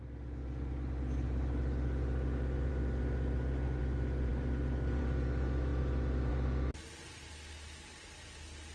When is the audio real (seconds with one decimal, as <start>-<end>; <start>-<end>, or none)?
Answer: 0.0-8.7